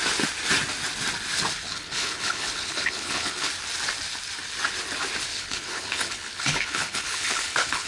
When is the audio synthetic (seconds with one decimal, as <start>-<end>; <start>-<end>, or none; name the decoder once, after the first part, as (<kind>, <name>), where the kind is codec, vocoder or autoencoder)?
1.7-3.5 (codec, HILCodec); 5.3-7.9